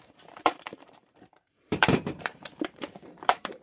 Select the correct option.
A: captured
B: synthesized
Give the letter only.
B